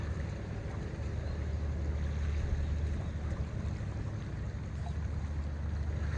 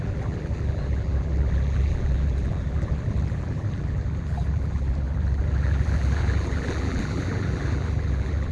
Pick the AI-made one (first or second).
second